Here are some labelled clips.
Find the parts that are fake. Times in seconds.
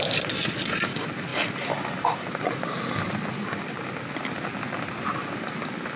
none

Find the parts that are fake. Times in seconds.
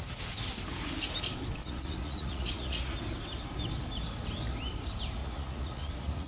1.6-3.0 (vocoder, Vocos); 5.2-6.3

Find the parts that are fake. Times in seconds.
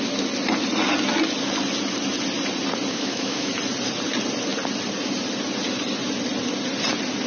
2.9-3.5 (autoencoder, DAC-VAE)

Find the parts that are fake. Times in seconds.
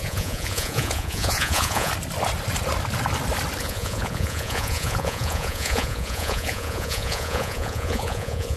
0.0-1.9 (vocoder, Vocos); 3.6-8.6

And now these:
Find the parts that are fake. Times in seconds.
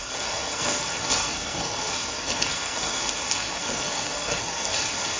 0.0-5.2 (codec, SNAC)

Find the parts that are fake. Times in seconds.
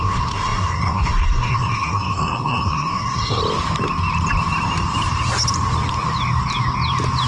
0.0-3.4 (codec, SNAC)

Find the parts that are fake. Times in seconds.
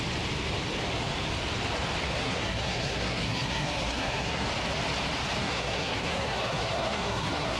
2.2-4.5 (codec, SNAC); 5.4-7.6